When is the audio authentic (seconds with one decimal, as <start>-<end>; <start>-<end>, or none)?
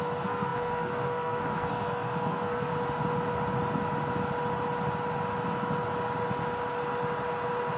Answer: 2.7-7.8